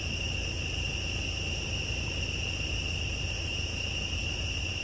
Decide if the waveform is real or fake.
real